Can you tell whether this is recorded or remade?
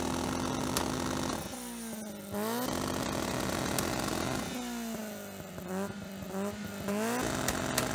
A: recorded